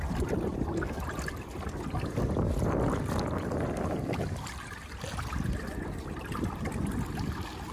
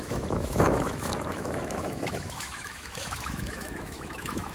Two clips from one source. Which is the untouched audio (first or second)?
first